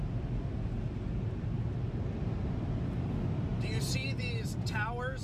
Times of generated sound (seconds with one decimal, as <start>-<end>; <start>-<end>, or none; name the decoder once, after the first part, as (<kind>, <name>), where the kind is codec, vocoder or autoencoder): none